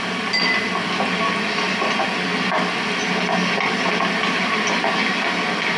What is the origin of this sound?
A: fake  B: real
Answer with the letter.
B